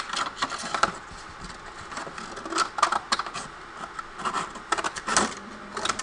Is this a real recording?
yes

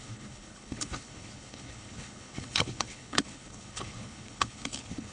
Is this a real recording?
no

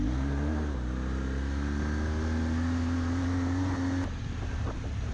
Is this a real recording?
yes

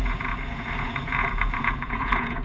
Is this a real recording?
no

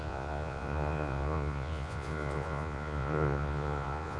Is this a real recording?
no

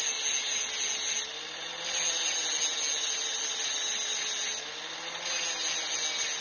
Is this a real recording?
yes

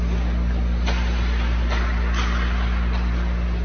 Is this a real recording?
yes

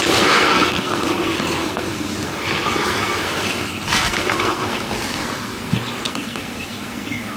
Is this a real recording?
no